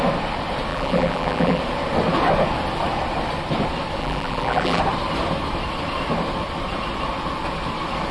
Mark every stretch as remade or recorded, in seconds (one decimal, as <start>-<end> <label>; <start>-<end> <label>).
0.0-0.7 recorded; 0.7-1.6 remade; 1.6-4.0 recorded; 4.0-4.8 remade; 4.8-8.1 recorded